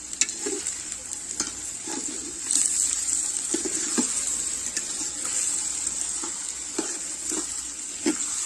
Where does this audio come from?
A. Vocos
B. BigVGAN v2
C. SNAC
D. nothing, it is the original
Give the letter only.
D